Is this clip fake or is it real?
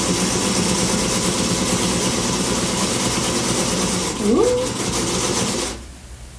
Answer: real